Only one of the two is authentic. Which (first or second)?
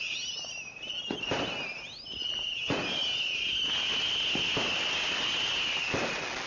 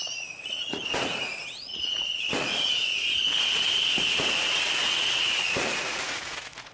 first